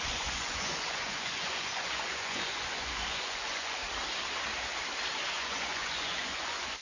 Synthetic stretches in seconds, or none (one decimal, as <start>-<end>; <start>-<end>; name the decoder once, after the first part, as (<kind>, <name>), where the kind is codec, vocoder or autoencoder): 0.0-3.8 (vocoder, Vocos); 5.3-6.8